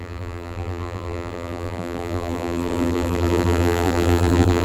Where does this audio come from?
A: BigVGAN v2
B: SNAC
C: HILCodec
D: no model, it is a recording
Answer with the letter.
A